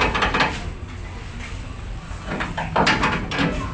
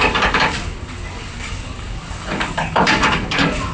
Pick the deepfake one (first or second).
second